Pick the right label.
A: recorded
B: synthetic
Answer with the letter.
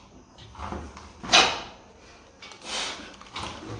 A